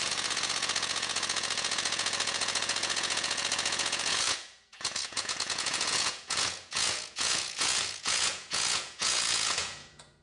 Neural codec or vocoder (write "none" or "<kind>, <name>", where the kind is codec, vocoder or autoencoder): vocoder, Vocos